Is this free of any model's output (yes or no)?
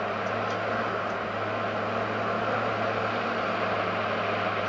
yes